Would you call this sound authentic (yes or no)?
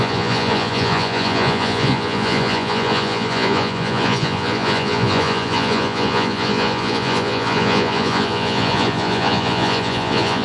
no